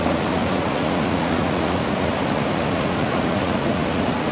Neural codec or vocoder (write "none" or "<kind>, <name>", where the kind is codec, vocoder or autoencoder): vocoder, Vocos